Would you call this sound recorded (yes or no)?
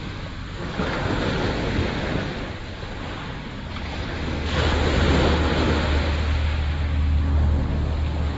yes